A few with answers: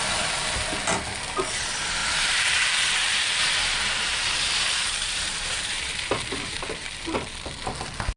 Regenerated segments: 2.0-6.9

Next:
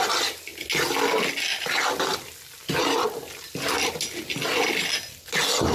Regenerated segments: none